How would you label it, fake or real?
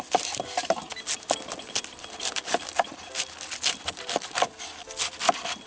real